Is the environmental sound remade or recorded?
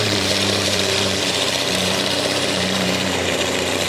remade